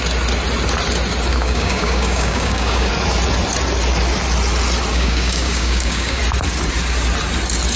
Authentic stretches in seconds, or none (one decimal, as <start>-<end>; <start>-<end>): 0.0-1.3; 2.9-4.9; 6.2-7.8

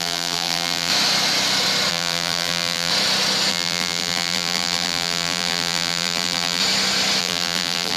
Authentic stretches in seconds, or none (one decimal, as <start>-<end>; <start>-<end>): 0.9-1.9; 2.9-3.5; 6.6-7.2

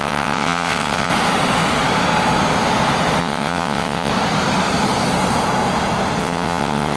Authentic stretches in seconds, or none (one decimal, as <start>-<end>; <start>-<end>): 1.1-3.2; 4.1-6.2

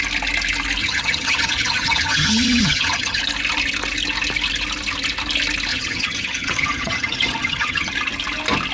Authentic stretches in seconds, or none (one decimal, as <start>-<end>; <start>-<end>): 0.0-0.8; 3.2-5.7; 7.9-8.7

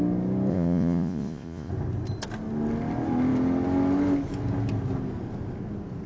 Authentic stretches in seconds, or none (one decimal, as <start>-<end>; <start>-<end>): 0.0-0.5; 1.7-6.1